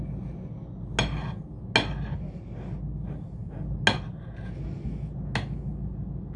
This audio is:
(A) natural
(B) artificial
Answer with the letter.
A